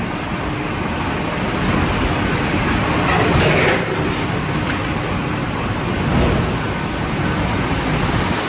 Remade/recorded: recorded